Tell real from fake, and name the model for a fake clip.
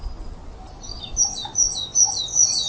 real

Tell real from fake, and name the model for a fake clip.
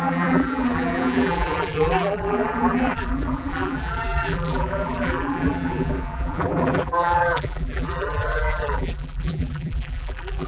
fake, vocoder, BigVGAN v2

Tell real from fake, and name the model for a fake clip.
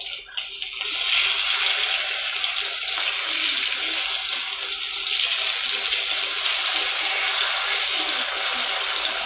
real